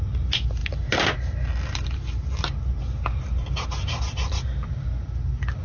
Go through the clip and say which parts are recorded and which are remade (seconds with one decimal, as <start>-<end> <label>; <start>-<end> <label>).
0.0-5.6 recorded